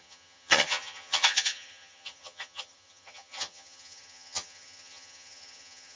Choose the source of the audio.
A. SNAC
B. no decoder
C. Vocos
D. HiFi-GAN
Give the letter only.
D